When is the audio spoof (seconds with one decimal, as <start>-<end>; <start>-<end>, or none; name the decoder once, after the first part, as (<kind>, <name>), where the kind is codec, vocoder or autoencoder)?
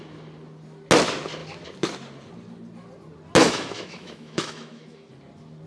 3.4-5.1 (autoencoder, DAC-VAE)